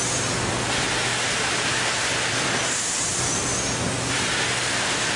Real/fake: real